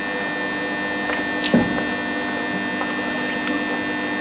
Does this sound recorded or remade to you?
recorded